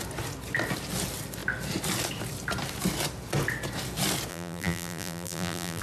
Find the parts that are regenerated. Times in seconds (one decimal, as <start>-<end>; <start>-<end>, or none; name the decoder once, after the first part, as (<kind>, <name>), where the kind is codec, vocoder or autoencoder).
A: 4.3-5.8 (vocoder, BigVGAN v2)